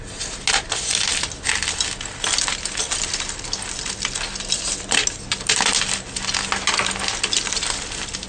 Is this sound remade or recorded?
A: recorded